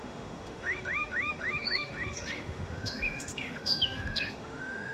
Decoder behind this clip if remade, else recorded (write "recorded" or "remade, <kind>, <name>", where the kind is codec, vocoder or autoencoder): remade, autoencoder, DAC-VAE